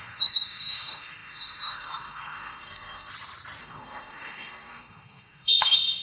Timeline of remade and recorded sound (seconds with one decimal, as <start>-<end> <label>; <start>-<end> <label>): 0.0-3.1 remade; 3.1-3.6 recorded; 3.6-6.0 remade